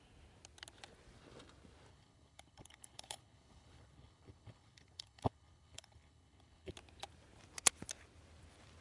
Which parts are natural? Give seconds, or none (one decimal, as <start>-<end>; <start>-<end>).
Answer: 0.0-1.9; 6.7-8.8